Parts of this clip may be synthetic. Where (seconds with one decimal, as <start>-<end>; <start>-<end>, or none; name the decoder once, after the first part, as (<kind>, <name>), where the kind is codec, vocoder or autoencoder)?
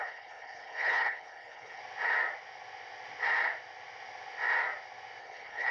0.0-1.8 (codec, HILCodec); 5.2-5.7